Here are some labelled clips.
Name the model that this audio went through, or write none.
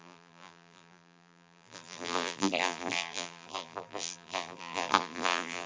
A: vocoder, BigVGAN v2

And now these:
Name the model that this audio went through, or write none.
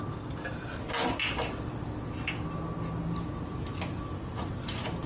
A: none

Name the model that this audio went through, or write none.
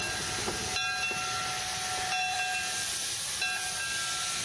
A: none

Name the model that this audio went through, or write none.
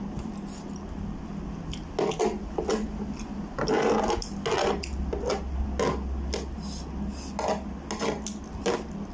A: none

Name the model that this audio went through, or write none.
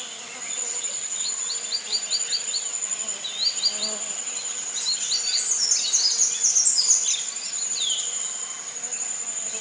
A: none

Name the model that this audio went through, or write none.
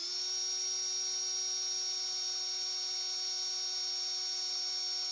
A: none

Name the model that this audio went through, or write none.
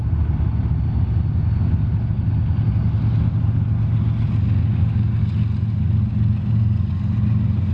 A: none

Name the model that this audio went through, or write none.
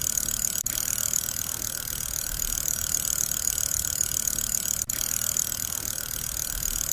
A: none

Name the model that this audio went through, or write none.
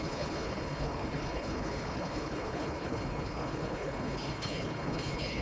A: codec, HILCodec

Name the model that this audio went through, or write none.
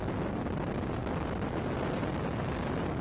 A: none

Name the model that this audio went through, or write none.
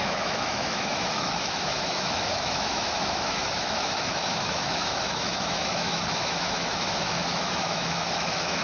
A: autoencoder, DAC-VAE